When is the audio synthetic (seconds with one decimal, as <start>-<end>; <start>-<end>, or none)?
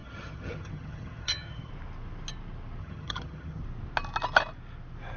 0.0-1.7; 2.8-3.6